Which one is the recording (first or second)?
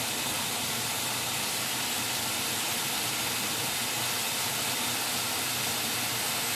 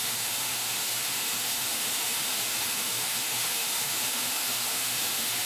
first